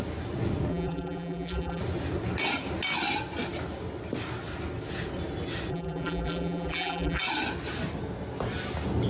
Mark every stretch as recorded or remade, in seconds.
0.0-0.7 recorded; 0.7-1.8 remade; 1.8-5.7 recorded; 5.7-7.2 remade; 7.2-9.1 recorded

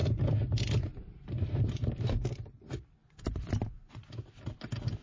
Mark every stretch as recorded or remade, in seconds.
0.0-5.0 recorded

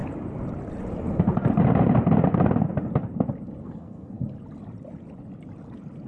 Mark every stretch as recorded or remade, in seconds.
0.0-3.6 recorded; 3.6-4.2 remade; 4.2-6.1 recorded

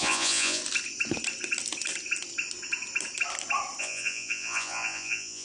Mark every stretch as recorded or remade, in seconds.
0.0-0.6 remade; 0.6-3.8 recorded; 3.8-5.4 remade